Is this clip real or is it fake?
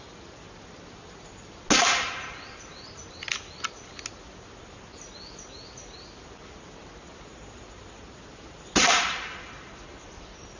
real